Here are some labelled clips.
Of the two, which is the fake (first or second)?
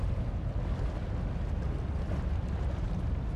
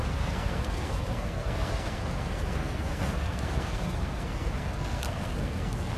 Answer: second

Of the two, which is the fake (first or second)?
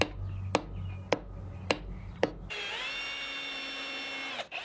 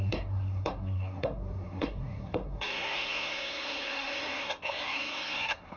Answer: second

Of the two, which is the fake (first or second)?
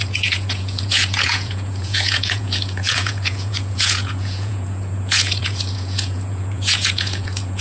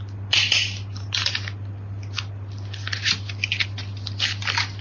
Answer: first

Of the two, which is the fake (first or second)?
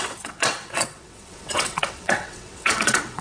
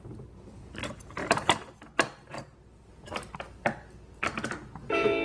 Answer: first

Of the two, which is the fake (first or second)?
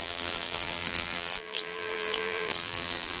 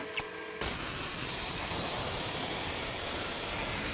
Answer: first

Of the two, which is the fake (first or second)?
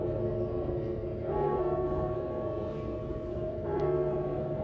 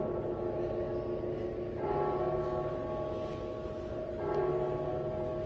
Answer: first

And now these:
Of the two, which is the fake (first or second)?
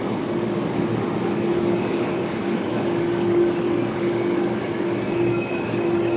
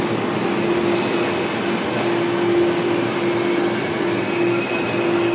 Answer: first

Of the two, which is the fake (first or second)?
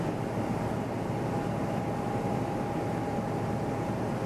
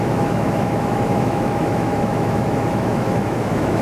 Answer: second